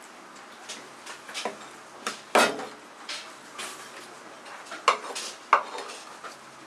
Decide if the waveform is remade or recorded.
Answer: recorded